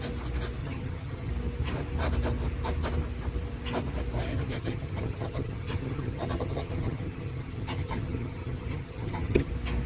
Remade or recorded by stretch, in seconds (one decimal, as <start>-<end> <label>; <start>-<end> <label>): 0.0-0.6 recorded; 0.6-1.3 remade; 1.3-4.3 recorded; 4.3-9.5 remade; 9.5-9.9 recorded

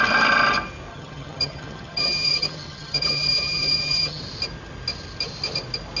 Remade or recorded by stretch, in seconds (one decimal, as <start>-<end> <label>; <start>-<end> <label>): 0.0-0.9 recorded; 0.9-4.2 remade; 4.2-6.0 recorded

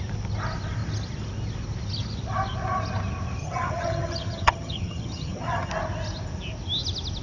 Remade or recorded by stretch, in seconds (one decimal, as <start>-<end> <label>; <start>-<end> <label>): 0.0-3.4 recorded; 3.4-5.7 remade; 5.7-7.2 recorded

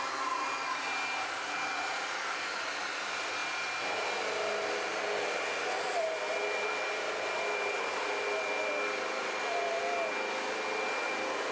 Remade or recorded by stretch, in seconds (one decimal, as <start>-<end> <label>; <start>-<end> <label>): 0.0-11.5 recorded

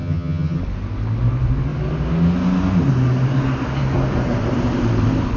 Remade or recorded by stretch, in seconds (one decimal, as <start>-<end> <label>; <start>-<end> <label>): 0.0-0.6 remade; 0.6-5.4 recorded

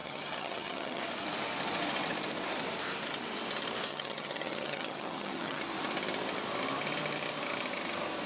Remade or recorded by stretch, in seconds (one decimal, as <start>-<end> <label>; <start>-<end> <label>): 0.0-1.0 remade; 1.0-3.9 recorded; 3.9-5.6 remade; 5.6-8.3 recorded

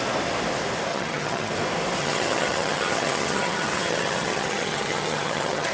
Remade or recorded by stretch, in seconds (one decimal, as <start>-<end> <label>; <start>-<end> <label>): 0.0-0.9 recorded; 0.9-1.5 remade; 1.5-2.0 recorded; 2.0-5.7 remade